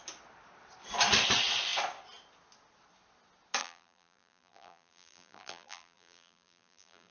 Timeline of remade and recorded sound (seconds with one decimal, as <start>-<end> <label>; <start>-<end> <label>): 0.0-3.6 recorded; 3.6-7.1 remade